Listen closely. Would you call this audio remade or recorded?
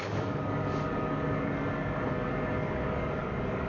remade